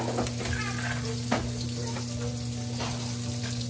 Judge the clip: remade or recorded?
recorded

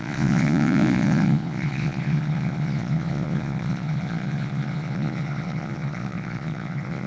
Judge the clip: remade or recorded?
remade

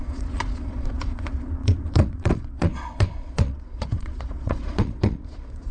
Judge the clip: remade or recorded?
remade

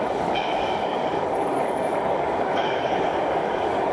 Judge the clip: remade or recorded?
remade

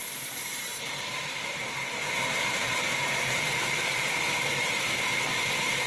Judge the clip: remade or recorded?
remade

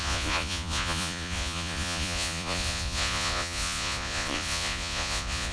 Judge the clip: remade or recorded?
remade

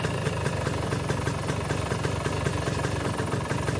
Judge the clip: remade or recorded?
recorded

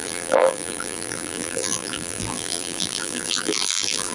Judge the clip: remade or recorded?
remade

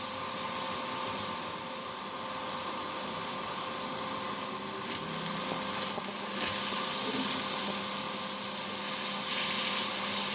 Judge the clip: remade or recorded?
recorded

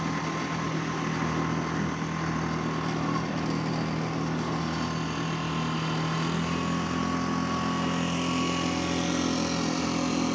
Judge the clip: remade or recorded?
recorded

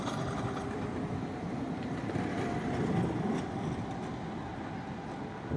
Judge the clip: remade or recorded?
remade